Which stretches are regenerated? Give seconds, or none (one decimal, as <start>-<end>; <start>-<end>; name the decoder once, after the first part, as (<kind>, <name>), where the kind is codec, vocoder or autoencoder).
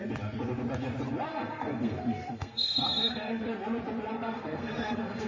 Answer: 1.3-3.5 (codec, SNAC); 4.1-5.3